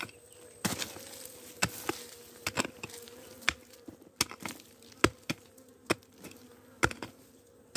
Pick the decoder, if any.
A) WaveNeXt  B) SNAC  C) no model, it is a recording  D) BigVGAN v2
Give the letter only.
C